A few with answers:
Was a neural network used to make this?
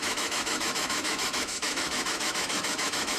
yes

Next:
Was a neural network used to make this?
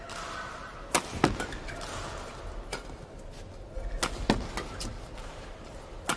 no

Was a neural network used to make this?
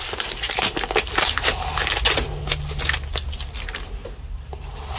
no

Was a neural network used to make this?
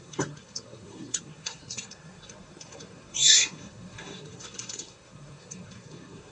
yes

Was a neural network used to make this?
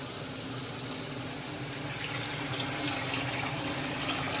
no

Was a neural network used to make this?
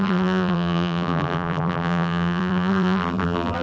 yes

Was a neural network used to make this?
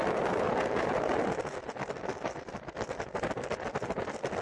no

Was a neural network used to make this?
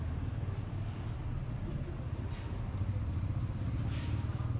no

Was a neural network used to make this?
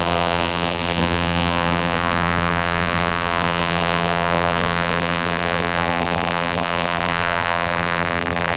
yes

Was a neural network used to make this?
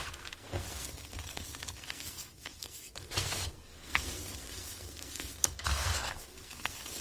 yes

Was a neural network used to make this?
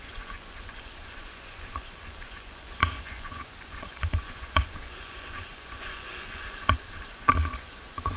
yes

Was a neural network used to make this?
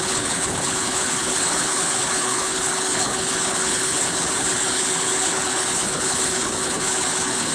yes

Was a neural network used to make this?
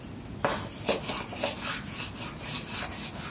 no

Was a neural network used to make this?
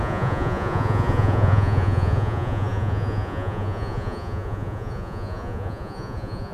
yes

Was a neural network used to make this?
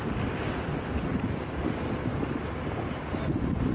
no